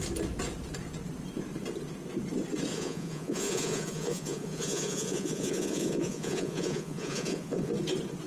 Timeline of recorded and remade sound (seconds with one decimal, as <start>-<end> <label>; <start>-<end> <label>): 0.0-2.7 recorded; 2.7-7.7 remade; 7.7-8.3 recorded